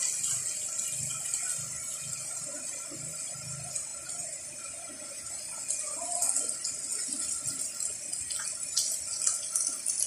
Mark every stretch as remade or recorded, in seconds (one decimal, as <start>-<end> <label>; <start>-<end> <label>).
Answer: 0.0-3.9 recorded; 3.9-4.8 remade; 4.8-10.1 recorded

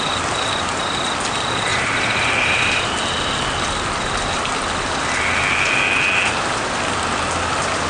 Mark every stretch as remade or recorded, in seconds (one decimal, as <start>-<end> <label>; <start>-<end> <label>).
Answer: 0.0-1.7 recorded; 1.7-3.0 remade; 3.0-7.9 recorded

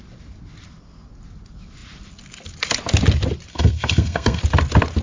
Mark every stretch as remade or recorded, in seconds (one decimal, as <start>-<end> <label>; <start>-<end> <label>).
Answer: 0.0-3.5 recorded; 3.5-4.4 remade; 4.4-5.0 recorded

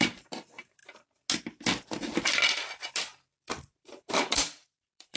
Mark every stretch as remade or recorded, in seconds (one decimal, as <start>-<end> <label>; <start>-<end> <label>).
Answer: 0.0-0.8 remade; 0.8-3.7 recorded; 3.7-5.2 remade

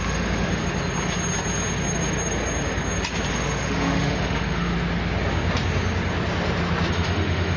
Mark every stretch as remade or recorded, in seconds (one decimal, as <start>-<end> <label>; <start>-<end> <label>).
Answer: 0.0-0.6 remade; 0.6-3.3 recorded; 3.3-4.7 remade; 4.7-6.9 recorded; 6.9-7.6 remade

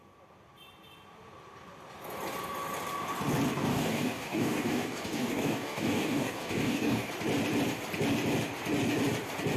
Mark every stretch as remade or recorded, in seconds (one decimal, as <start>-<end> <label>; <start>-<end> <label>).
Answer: 0.0-3.5 recorded; 3.5-7.1 remade; 7.1-9.6 recorded